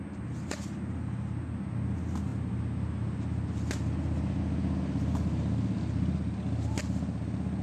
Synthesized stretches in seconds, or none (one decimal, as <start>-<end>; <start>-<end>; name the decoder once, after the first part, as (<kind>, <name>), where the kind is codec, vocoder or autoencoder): none